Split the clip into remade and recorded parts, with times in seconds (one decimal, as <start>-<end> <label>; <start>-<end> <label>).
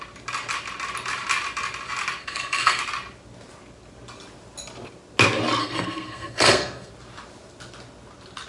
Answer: 0.0-2.2 recorded; 2.2-2.8 remade; 2.8-5.6 recorded; 5.6-6.9 remade; 6.9-8.5 recorded